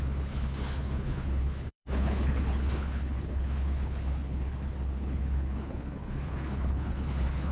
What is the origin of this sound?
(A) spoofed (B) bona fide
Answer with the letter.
A